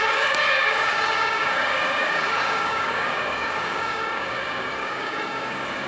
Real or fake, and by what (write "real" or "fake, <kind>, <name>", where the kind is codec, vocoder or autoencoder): fake, codec, DAC